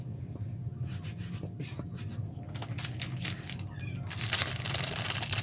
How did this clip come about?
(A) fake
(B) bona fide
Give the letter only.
B